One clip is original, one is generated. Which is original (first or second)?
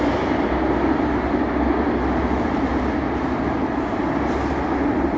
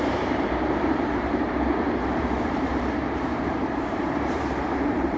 first